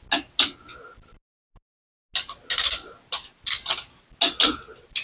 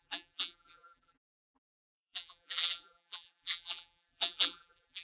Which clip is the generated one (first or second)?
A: second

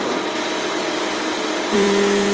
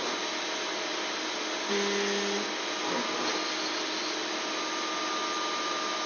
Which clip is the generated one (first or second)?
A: first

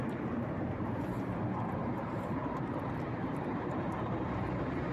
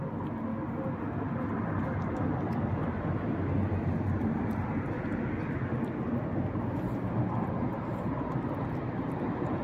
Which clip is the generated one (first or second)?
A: first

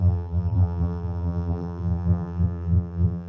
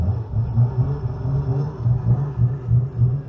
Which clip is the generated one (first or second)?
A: first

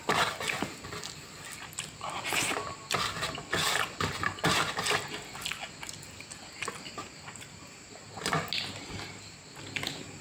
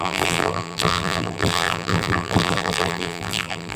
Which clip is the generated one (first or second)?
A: second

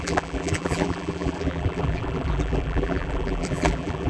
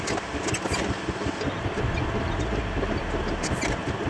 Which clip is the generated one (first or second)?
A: first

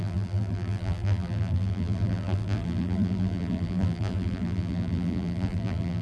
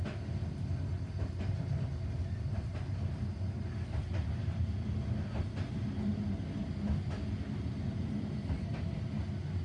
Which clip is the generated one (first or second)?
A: first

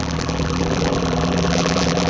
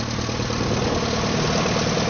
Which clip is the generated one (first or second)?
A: first